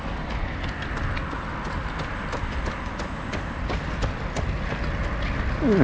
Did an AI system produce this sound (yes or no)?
no